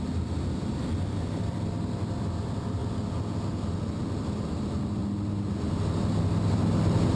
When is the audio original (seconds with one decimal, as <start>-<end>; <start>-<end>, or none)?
2.8-3.8; 5.0-5.7